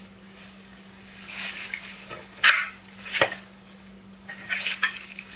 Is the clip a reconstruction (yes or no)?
yes